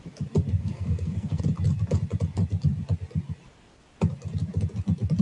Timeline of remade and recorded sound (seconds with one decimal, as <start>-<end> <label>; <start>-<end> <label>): 0.0-0.6 recorded; 0.6-1.4 remade; 1.4-5.2 recorded